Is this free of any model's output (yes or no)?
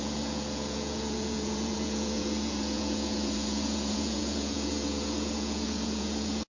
no